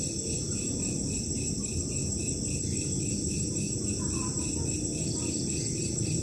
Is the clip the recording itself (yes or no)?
yes